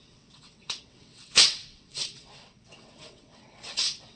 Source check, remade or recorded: remade